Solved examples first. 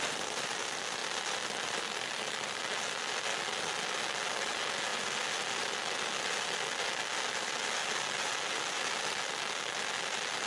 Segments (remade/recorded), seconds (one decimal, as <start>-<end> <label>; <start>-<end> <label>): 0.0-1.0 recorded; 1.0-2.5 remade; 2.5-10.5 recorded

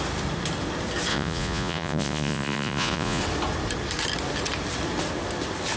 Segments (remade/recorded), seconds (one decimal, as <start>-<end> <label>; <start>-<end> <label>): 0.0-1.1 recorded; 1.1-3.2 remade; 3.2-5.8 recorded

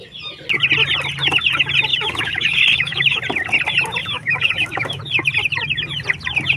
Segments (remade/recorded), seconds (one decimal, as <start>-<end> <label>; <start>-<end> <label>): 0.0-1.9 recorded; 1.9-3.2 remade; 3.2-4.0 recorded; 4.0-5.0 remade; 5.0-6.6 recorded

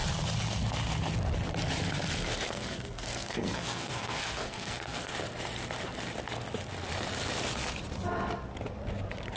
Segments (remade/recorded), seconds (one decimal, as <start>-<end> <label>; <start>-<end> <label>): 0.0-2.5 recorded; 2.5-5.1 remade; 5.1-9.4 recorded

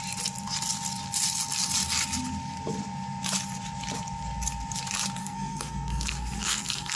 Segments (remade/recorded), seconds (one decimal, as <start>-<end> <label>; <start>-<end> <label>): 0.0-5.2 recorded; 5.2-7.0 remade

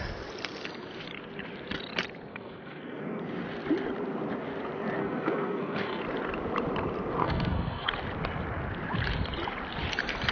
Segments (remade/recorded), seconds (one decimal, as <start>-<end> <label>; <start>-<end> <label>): 0.0-2.3 recorded; 2.3-3.2 remade; 3.2-5.0 recorded; 5.0-6.0 remade; 6.0-7.2 recorded; 7.2-7.9 remade; 7.9-10.3 recorded